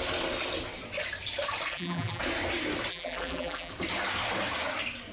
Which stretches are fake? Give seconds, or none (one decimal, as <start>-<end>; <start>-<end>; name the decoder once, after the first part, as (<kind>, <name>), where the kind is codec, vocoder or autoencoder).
1.7-2.2 (vocoder, BigVGAN v2); 2.9-3.7